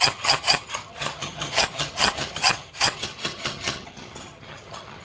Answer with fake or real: fake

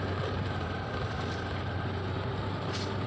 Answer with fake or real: real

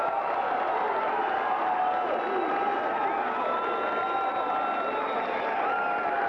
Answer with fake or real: real